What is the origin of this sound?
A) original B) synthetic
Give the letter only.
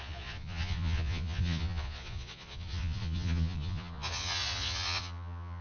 B